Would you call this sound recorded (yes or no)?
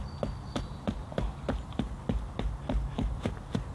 yes